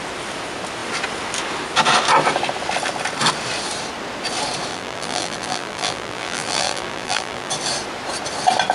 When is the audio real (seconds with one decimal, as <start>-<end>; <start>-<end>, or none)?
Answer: 0.0-4.7; 7.5-8.7